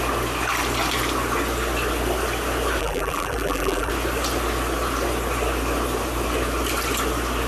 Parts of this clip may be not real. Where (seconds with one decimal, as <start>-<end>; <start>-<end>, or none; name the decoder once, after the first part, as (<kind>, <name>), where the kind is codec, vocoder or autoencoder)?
2.8-3.9 (vocoder, BigVGAN v2)